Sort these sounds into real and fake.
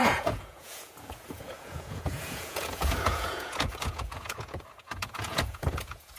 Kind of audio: fake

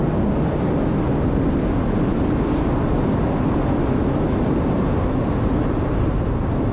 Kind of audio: real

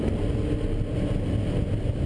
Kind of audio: real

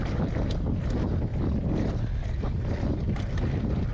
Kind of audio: real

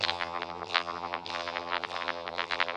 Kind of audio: fake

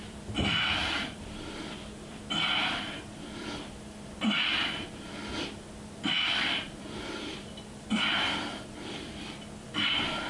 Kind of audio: fake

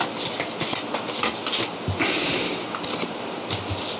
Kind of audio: real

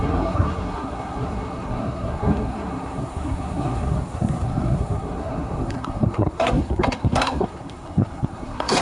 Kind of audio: fake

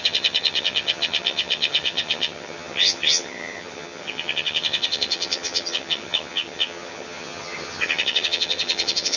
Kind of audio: fake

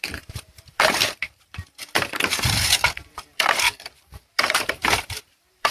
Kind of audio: fake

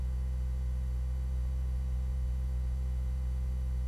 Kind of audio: real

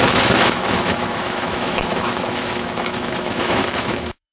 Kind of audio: fake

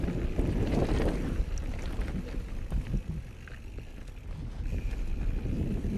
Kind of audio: real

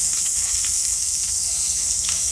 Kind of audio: fake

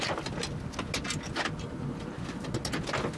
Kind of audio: real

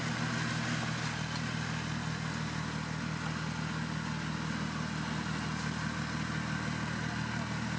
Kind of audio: real